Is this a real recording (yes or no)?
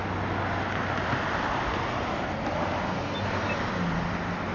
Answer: yes